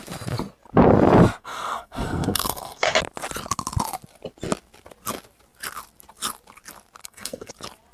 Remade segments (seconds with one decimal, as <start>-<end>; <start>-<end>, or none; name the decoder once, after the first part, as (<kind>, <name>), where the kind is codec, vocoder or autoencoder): 1.4-2.9 (codec, SNAC); 7.0-7.5